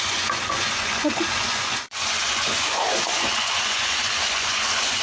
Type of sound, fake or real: fake